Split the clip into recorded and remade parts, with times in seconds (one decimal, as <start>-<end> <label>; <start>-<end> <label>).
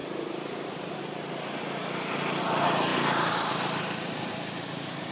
0.0-1.0 remade; 1.0-2.9 recorded; 2.9-4.3 remade; 4.3-5.1 recorded